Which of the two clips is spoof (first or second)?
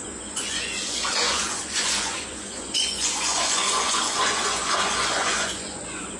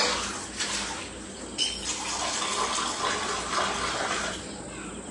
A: first